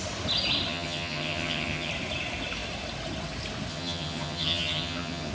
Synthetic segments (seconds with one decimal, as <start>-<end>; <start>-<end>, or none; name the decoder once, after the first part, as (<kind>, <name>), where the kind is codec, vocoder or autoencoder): 0.7-1.9 (vocoder, HiFi-GAN); 3.7-5.3

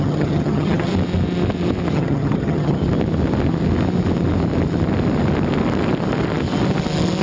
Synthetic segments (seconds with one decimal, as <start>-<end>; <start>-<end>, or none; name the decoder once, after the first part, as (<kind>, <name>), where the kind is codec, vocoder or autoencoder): 0.0-0.9 (vocoder, HiFi-GAN); 1.9-2.8

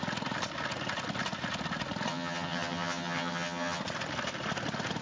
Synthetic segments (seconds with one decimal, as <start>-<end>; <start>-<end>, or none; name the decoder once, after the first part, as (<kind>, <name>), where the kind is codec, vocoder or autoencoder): 2.1-3.8 (vocoder, HiFi-GAN)

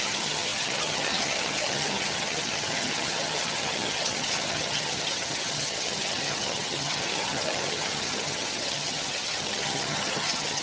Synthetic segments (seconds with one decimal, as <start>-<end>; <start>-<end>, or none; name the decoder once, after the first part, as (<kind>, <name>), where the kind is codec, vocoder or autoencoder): 0.0-10.6 (vocoder, HiFi-GAN)

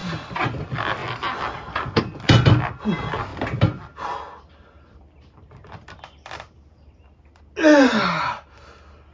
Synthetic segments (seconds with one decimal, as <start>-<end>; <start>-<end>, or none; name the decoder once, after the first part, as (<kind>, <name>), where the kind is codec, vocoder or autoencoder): none

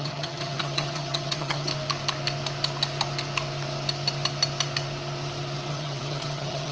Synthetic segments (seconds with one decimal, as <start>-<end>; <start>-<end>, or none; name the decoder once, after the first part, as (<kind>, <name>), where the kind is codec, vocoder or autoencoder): 0.0-1.7 (vocoder, HiFi-GAN); 5.7-6.7

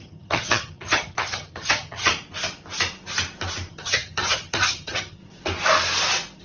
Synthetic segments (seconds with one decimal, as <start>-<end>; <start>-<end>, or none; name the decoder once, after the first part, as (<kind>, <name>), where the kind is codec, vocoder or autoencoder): 0.0-2.1 (vocoder, HiFi-GAN); 3.7-5.2

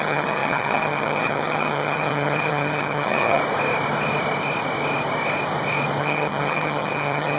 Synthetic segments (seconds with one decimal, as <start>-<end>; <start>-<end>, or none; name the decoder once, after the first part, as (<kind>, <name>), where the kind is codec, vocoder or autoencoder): 0.0-3.4 (vocoder, HiFi-GAN); 6.0-7.4